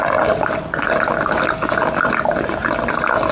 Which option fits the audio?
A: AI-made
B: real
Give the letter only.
B